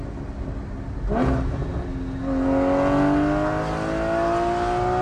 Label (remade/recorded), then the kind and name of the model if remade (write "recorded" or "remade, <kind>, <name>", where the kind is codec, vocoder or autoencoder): recorded